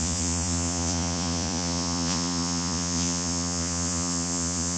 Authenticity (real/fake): fake